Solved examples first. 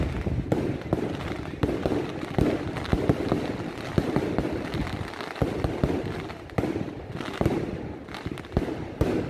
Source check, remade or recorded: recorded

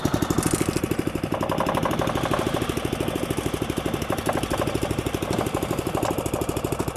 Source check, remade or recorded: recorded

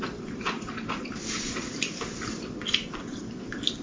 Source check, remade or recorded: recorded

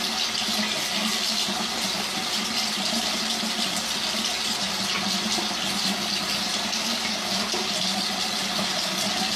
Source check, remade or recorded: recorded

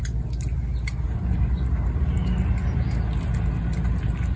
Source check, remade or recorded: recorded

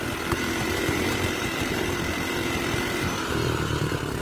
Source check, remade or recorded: remade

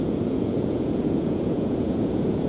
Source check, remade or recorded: remade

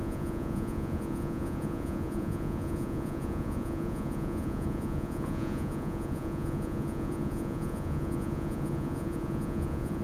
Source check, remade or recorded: remade